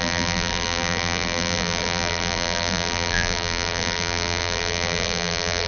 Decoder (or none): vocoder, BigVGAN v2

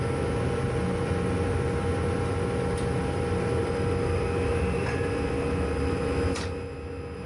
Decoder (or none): none